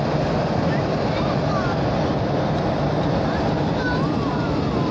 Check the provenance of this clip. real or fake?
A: real